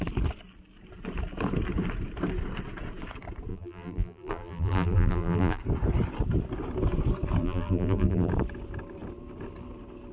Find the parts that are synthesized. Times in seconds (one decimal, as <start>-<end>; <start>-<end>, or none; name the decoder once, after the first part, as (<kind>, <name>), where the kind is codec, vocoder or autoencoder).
3.5-5.6 (vocoder, BigVGAN v2); 7.4-8.3